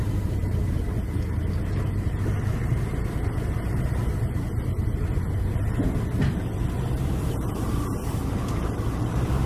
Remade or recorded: remade